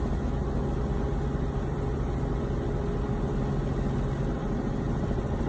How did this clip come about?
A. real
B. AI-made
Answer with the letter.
A